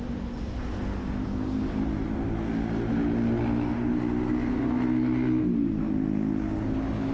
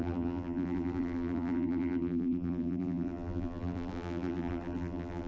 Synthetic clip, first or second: second